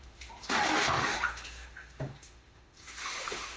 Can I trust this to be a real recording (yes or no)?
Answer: no